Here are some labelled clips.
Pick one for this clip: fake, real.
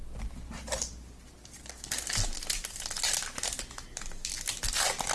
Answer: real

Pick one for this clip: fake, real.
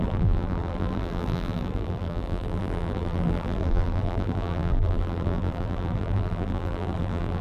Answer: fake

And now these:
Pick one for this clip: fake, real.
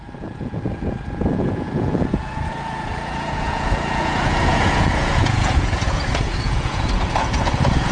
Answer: fake